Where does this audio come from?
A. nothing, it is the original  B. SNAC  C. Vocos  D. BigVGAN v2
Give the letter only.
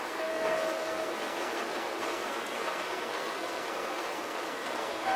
B